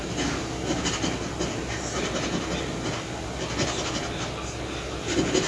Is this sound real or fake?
real